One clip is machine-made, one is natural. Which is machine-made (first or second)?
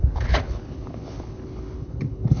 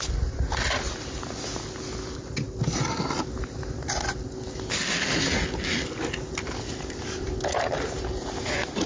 first